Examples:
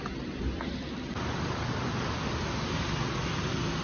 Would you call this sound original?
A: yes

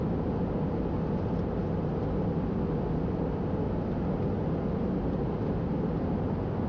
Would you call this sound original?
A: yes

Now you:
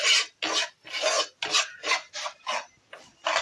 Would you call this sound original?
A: yes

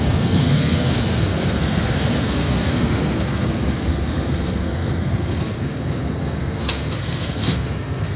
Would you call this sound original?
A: no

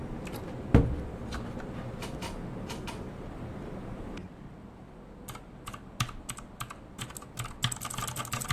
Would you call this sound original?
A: yes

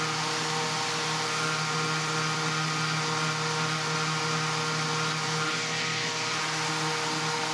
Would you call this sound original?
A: yes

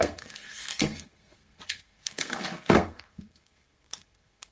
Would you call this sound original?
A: no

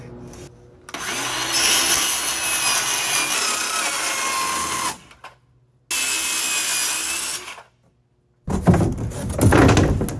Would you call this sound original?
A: yes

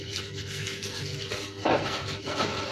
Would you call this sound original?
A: no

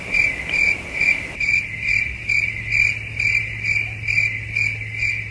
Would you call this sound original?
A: yes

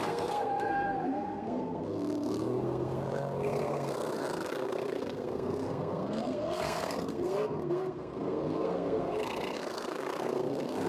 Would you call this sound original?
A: no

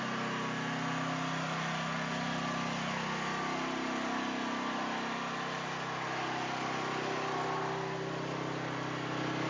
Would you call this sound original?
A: yes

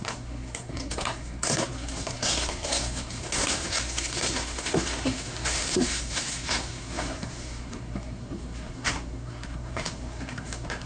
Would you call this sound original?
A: no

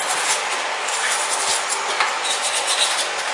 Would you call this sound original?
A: yes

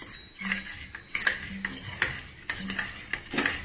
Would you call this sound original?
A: yes